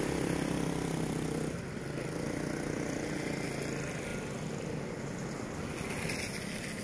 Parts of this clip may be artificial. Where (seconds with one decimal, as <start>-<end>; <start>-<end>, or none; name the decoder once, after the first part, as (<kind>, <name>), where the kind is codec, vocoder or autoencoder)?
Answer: none